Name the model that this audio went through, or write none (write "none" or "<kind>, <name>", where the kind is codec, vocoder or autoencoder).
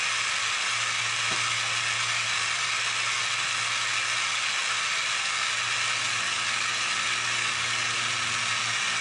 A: none